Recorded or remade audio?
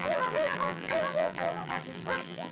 remade